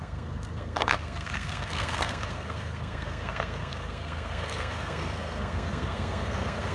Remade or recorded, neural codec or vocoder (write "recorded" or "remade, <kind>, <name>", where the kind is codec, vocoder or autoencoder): remade, codec, SNAC